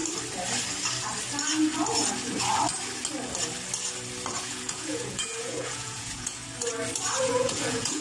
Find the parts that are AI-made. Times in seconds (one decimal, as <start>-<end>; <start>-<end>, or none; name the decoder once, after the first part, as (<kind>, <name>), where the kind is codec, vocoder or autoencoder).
4.4-6.4 (vocoder, Vocos); 7.2-8.0